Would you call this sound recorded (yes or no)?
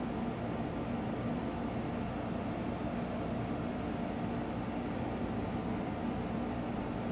yes